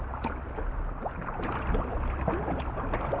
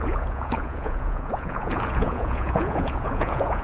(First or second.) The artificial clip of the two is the second